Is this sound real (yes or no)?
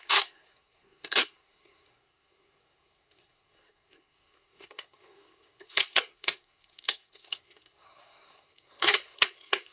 no